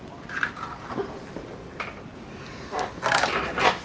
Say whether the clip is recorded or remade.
recorded